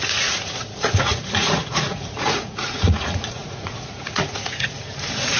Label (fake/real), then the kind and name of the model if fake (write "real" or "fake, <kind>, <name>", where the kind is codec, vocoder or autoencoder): fake, vocoder, Vocos